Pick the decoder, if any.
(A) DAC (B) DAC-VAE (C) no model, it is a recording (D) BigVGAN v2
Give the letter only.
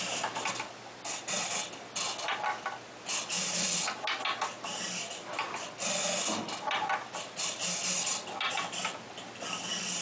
C